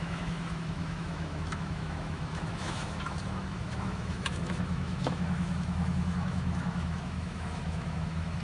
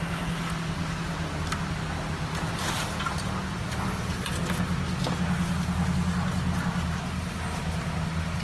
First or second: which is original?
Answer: second